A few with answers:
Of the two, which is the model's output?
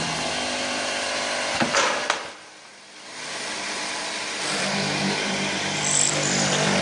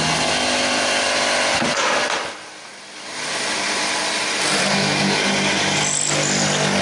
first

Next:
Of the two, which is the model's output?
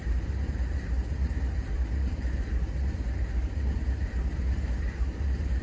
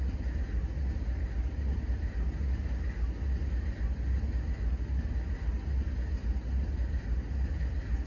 first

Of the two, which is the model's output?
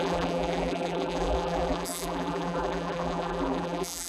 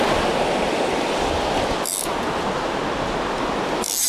first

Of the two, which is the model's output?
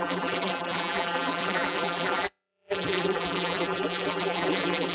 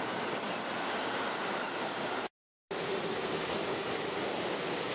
first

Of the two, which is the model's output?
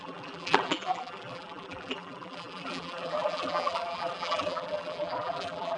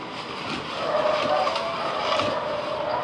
first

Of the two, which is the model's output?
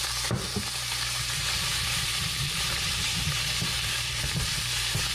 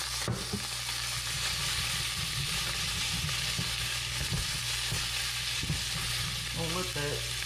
first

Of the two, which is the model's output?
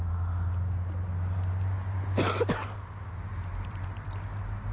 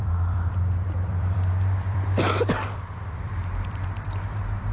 second